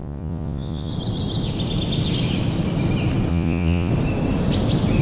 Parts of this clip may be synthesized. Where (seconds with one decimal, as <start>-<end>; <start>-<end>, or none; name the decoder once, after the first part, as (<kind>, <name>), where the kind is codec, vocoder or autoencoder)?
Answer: 0.0-0.9 (vocoder, Vocos); 3.3-3.9